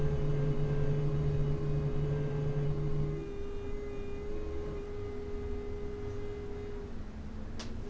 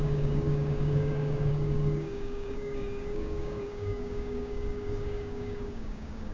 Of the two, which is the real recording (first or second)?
first